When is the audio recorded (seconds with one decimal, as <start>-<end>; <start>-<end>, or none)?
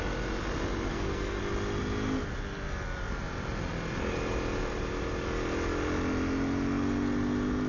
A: 0.0-0.9; 1.4-7.7